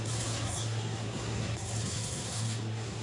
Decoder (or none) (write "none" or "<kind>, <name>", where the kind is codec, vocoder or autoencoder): codec, SNAC